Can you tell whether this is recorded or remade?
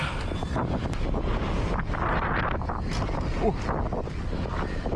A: recorded